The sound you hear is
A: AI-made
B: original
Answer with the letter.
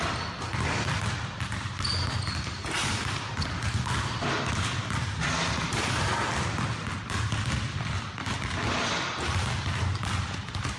B